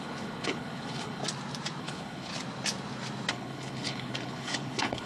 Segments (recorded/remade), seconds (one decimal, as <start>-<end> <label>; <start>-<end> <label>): 0.0-1.2 remade; 1.2-1.8 recorded; 1.8-2.3 remade; 2.3-3.3 recorded; 3.3-5.1 remade

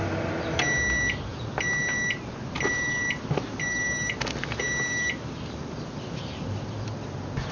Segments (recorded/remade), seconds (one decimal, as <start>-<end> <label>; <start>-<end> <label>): 0.0-7.5 recorded

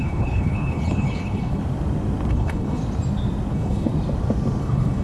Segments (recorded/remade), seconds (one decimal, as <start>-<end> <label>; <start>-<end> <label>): 0.0-1.6 remade; 1.6-2.3 recorded; 2.3-2.8 remade; 2.8-3.5 recorded; 3.5-3.9 remade; 3.9-4.6 recorded; 4.6-5.0 remade